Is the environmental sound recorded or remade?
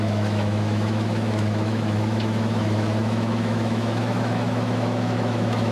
remade